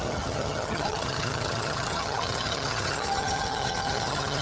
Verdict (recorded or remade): remade